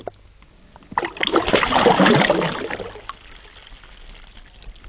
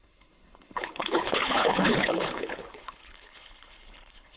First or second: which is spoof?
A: second